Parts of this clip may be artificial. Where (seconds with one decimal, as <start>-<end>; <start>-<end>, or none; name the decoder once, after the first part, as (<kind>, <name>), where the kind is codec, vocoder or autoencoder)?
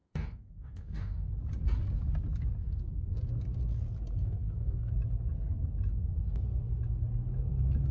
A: 0.0-1.3 (codec, DAC); 4.2-4.9